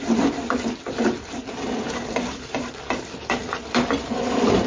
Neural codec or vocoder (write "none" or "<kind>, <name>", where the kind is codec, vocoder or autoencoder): vocoder, BigVGAN v2